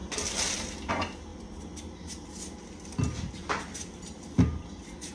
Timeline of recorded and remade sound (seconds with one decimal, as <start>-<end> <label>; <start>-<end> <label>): 0.0-5.1 recorded